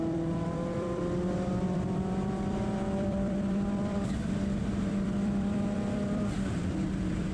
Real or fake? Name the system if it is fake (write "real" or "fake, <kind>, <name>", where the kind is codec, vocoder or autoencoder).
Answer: fake, vocoder, BigVGAN v2